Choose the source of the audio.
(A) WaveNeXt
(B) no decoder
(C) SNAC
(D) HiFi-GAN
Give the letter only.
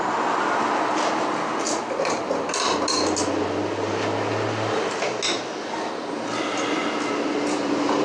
B